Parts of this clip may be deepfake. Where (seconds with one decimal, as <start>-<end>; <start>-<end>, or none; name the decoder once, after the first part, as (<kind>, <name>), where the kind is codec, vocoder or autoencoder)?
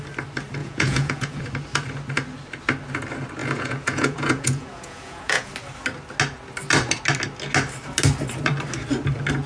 0.6-1.4 (vocoder, Vocos); 3.4-5.5